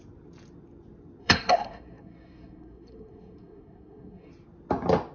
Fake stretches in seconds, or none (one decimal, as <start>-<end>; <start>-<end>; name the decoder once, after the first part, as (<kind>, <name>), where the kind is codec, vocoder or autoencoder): 1.2-4.3 (codec, SNAC)